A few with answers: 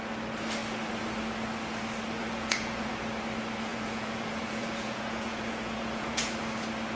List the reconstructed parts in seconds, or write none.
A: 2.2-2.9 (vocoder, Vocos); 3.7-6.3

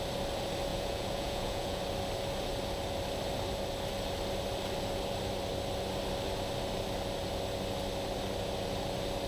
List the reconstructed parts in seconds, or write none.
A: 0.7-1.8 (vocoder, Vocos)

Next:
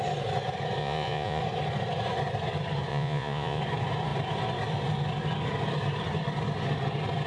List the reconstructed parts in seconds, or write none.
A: 0.8-1.4 (vocoder, Vocos); 2.9-3.6

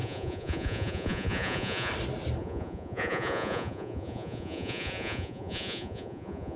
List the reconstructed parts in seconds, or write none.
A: 0.0-1.9 (vocoder, Vocos); 2.4-6.6